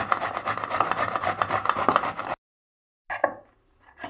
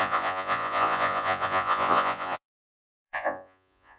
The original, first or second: first